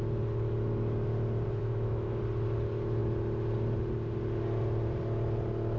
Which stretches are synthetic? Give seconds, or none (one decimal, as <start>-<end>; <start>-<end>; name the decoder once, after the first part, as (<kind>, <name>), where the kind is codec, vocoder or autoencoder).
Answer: 1.6-2.2 (autoencoder, DAC-VAE)

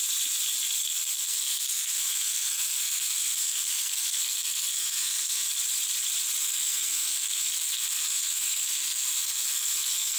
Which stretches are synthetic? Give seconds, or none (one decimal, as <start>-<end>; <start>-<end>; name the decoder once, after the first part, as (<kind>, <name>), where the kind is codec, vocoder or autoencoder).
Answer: 0.8-5.5 (codec, SNAC); 6.4-10.2

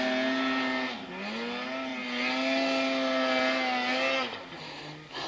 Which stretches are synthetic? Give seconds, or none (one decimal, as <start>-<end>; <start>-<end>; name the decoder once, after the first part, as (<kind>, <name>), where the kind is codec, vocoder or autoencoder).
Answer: none